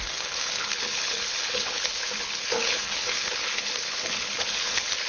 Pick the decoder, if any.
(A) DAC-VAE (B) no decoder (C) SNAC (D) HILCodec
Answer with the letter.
D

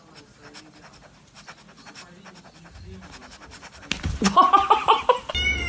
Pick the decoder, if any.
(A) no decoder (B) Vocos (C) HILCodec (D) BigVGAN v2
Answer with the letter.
A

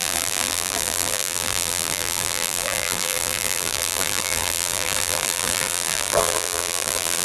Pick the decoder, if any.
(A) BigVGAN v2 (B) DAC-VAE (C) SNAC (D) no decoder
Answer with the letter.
A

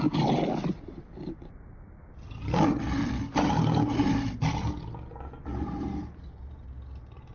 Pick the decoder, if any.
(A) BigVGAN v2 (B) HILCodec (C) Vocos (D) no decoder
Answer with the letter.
D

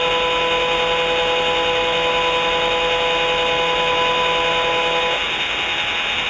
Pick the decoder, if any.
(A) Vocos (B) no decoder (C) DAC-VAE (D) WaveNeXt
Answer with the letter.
B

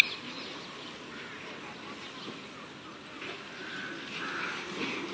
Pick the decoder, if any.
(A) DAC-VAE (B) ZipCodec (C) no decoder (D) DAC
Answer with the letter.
C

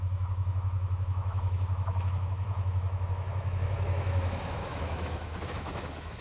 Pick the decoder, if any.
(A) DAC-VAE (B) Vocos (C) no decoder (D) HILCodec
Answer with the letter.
A